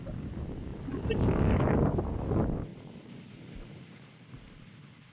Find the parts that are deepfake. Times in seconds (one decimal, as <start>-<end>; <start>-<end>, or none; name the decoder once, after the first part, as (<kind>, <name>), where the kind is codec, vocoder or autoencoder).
0.7-1.6 (vocoder, BigVGAN v2)